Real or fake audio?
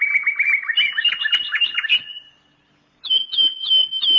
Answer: real